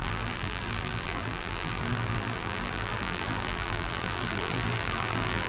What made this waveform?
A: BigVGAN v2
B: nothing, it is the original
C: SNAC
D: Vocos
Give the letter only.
A